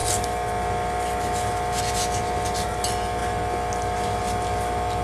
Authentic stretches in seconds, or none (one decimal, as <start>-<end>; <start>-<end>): 0.0-5.0